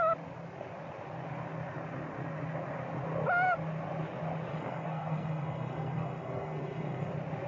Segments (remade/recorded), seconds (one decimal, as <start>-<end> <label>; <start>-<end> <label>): 0.0-4.5 recorded; 4.5-7.1 remade; 7.1-7.5 recorded